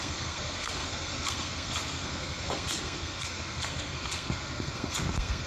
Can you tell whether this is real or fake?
fake